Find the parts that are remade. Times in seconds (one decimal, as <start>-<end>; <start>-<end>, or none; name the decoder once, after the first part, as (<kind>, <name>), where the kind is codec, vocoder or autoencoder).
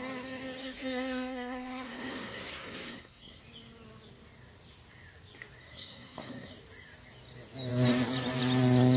0.6-3.4 (codec, SNAC); 5.6-6.5